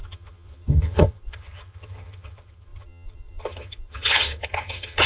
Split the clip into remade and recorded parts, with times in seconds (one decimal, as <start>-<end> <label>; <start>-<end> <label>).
0.0-5.1 remade